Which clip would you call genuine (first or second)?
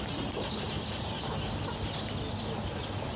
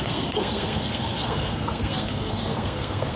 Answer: first